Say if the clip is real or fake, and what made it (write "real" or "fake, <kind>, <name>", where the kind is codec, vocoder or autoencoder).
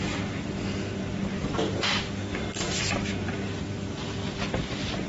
real